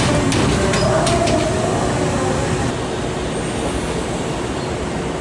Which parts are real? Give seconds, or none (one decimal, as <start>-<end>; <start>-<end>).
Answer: 0.0-5.2